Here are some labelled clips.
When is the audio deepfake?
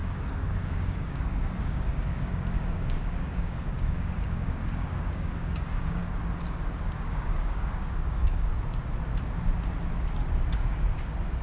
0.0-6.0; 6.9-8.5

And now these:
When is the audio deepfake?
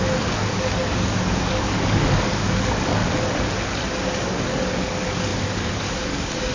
0.0-3.0; 4.0-6.5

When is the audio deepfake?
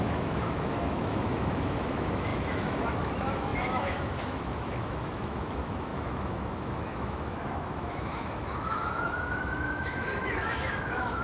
0.0-11.2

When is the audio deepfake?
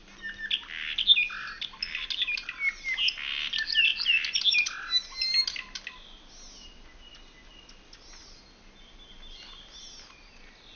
none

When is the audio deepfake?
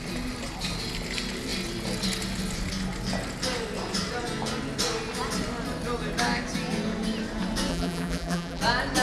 7.7-8.6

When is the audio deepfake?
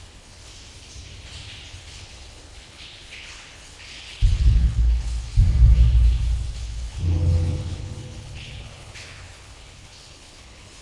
0.0-0.5; 1.7-5.3; 6.6-10.8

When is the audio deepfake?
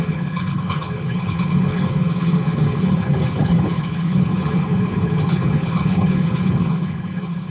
0.0-7.5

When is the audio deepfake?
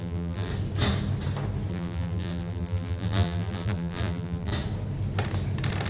0.0-0.5; 1.7-4.5